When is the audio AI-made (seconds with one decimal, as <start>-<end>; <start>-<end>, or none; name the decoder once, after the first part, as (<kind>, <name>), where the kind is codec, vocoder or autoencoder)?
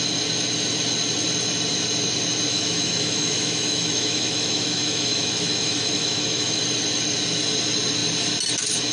2.5-6.6 (autoencoder, DAC-VAE)